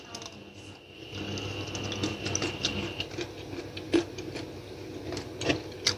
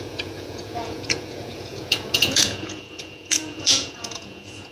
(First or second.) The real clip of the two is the first